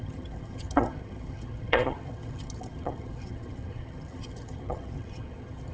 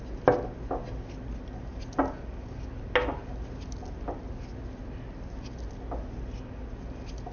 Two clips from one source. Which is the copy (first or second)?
first